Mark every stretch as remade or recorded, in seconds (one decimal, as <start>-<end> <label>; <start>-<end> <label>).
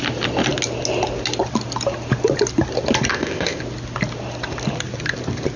0.0-3.1 recorded; 3.1-3.6 remade; 3.6-5.6 recorded